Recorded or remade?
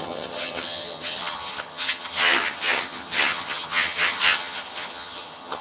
remade